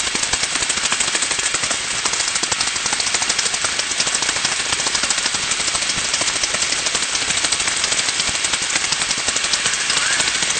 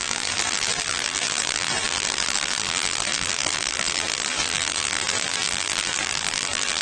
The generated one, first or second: second